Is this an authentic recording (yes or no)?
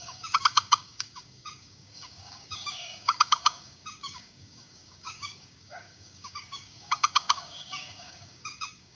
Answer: no